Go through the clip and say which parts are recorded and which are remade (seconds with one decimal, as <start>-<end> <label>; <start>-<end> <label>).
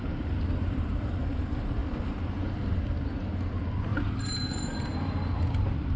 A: 0.0-1.8 remade; 1.8-3.5 recorded; 3.5-3.9 remade; 3.9-4.5 recorded; 4.5-6.0 remade